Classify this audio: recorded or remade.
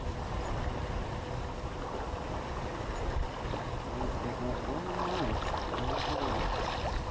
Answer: recorded